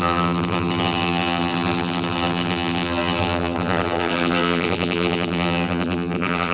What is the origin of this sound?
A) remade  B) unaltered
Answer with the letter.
A